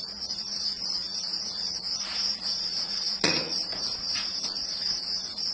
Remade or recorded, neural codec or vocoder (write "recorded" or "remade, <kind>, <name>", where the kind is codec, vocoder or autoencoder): remade, vocoder, Vocos